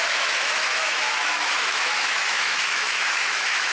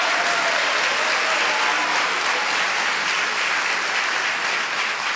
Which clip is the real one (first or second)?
second